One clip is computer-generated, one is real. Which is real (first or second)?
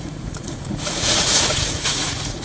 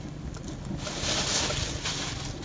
second